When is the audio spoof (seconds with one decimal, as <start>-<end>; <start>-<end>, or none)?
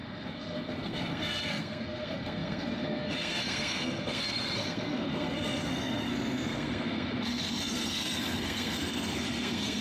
0.0-9.8